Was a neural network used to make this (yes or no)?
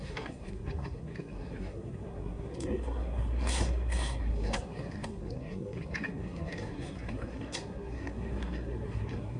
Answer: yes